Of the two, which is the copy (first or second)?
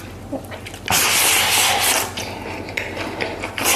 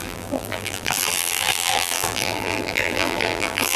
second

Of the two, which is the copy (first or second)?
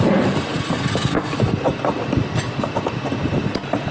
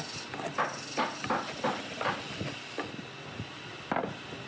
first